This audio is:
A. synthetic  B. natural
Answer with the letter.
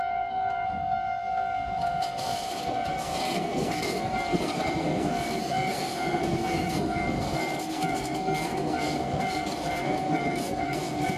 A